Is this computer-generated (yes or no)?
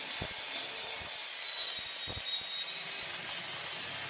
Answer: no